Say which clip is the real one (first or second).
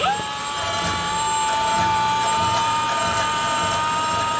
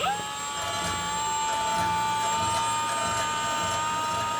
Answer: second